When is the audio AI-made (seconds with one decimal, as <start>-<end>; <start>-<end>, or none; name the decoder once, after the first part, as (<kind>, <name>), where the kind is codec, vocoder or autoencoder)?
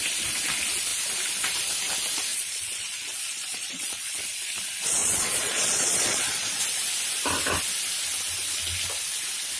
2.3-4.2 (vocoder, Vocos); 5.0-6.6